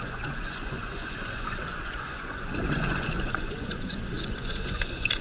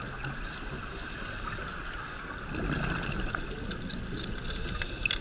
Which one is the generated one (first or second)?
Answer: first